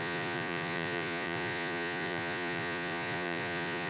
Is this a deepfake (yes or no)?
yes